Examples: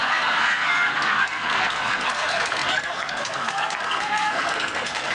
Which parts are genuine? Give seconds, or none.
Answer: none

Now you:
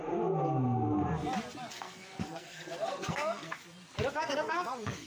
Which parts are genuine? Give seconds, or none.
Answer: 0.0-1.7; 3.6-4.1